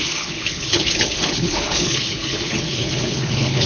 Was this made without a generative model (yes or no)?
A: no